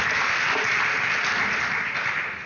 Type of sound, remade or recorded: recorded